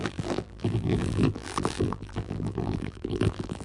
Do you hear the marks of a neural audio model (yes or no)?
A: yes